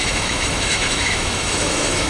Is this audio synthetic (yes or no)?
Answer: yes